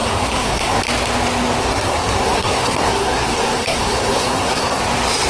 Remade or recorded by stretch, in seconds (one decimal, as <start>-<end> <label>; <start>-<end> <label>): 0.0-0.8 remade; 0.8-1.6 recorded; 1.6-4.8 remade; 4.8-5.3 recorded